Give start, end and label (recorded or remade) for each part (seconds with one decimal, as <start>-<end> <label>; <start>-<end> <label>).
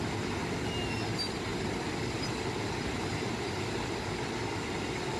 0.0-1.5 recorded; 1.5-3.3 remade; 3.3-5.2 recorded